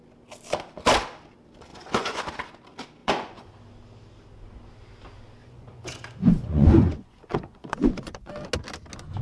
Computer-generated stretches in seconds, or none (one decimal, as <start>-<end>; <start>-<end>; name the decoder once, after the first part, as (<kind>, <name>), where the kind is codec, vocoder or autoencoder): 1.7-2.2 (vocoder, Vocos); 3.0-3.5; 5.4-8.3